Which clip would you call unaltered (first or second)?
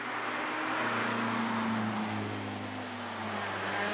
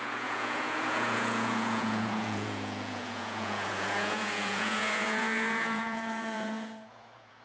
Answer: first